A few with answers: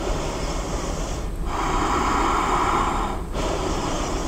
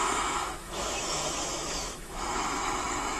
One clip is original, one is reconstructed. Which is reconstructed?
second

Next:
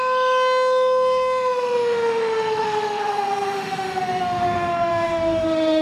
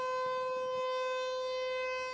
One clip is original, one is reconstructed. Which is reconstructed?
first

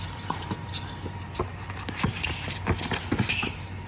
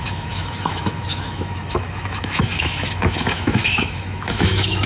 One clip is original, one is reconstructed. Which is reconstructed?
second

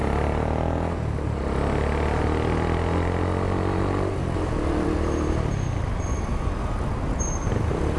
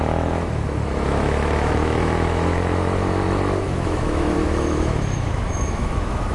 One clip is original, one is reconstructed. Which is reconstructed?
second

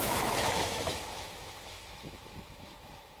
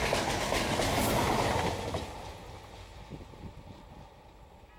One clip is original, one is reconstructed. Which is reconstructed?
first